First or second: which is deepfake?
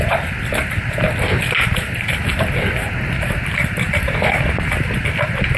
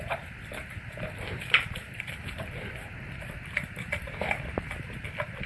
second